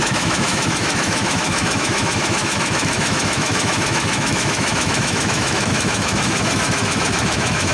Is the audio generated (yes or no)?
yes